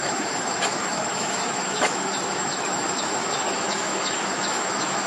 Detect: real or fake fake